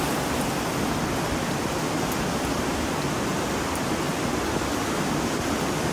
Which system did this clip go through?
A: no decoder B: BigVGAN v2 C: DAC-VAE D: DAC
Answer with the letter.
A